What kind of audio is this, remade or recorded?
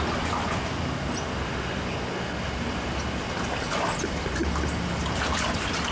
recorded